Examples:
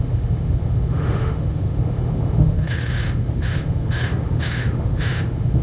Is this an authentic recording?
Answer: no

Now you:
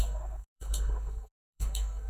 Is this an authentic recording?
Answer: no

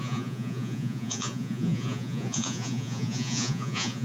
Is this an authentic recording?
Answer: no